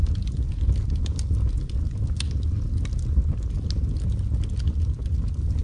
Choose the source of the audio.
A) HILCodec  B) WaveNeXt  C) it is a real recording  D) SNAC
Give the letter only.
C